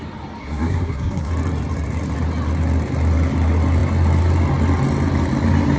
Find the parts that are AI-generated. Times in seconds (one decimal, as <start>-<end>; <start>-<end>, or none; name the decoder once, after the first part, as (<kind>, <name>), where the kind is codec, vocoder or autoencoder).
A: 0.4-1.3 (codec, SNAC)